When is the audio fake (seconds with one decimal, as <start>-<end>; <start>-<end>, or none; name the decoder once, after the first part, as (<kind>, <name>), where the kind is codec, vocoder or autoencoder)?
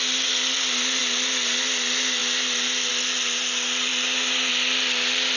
none